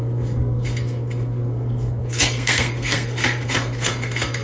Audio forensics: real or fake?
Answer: fake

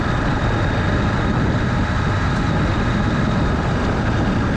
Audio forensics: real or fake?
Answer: real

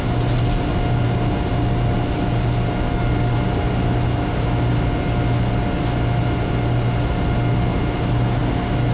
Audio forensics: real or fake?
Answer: real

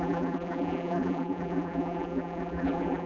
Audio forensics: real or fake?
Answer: fake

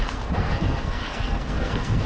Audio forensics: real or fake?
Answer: fake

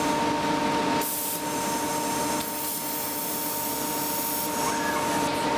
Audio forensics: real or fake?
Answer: real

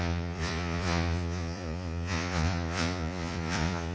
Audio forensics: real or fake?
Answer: fake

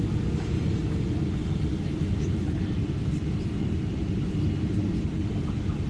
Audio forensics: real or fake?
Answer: real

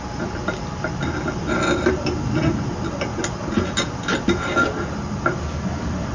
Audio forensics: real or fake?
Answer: real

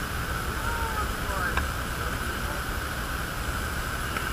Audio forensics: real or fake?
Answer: real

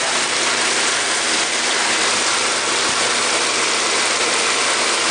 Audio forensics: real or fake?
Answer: real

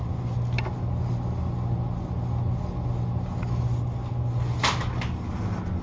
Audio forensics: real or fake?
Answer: real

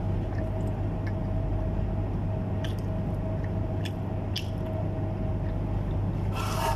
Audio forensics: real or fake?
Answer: real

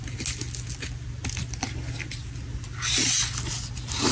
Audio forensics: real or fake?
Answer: real